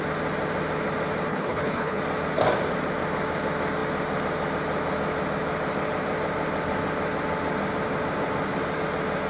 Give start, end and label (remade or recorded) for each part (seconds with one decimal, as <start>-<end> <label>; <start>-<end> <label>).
0.0-1.3 recorded; 1.3-2.0 remade; 2.0-9.3 recorded